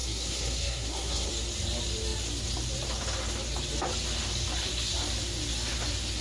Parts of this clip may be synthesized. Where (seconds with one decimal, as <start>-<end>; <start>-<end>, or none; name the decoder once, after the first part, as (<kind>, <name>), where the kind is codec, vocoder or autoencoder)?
0.0-1.3 (codec, SNAC)